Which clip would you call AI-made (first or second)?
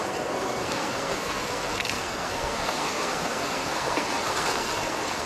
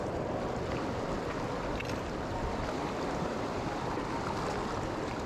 first